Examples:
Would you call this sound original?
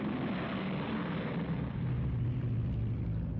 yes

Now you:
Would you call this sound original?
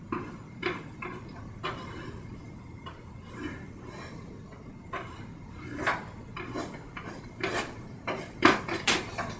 yes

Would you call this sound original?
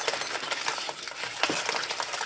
yes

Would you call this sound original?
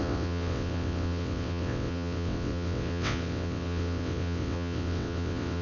no